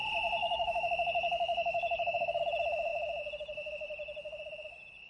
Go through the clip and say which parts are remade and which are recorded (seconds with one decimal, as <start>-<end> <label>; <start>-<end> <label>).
0.0-0.4 recorded; 0.4-2.4 remade; 2.4-5.1 recorded